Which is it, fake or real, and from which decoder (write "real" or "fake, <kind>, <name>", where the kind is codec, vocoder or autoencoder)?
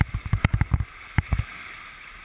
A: real